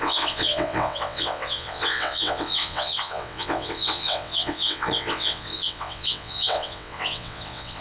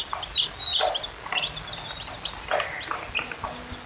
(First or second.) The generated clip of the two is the first